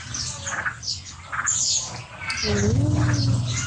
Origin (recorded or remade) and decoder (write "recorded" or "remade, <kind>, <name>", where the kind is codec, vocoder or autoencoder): recorded